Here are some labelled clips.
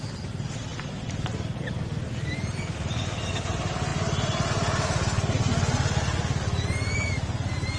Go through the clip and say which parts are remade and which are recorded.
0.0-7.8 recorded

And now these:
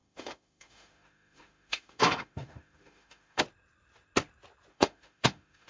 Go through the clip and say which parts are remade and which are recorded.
0.0-3.4 remade; 3.4-4.7 recorded; 4.7-5.7 remade

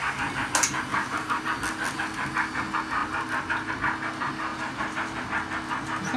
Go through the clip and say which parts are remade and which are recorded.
0.0-0.9 recorded; 0.9-1.4 remade; 1.4-3.0 recorded; 3.0-3.7 remade; 3.7-4.5 recorded; 4.5-5.2 remade; 5.2-6.2 recorded

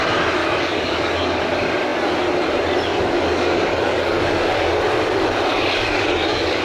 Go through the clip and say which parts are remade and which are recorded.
0.0-0.4 recorded; 0.4-1.4 remade; 1.4-2.9 recorded; 2.9-4.8 remade; 4.8-5.5 recorded; 5.5-6.6 remade

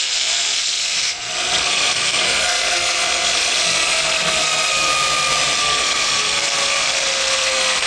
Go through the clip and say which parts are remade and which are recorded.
0.0-4.9 remade; 4.9-5.6 recorded; 5.6-7.9 remade

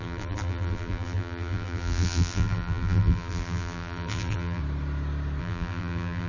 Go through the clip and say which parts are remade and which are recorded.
0.0-4.6 remade; 4.6-5.4 recorded; 5.4-6.3 remade

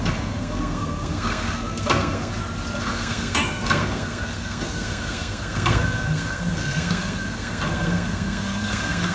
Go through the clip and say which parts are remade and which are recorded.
0.0-2.3 remade; 2.3-2.8 recorded; 2.8-9.1 remade

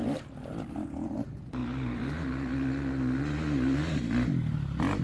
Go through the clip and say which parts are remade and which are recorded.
0.0-5.0 recorded